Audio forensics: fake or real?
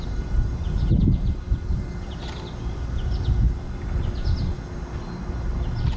real